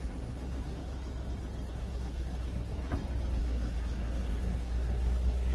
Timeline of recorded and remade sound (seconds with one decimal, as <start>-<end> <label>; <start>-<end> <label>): 0.0-1.0 remade; 1.0-1.7 recorded; 1.7-2.9 remade; 2.9-3.4 recorded; 3.4-5.5 remade